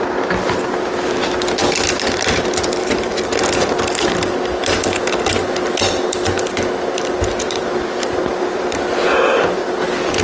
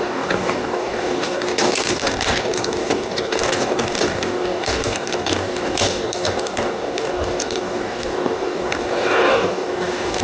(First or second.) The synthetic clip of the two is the second